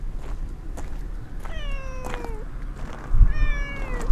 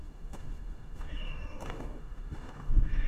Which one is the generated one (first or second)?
second